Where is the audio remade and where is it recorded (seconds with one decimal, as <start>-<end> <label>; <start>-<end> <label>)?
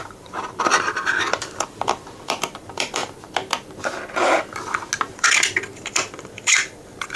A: 0.0-3.0 remade; 3.0-5.0 recorded; 5.0-7.2 remade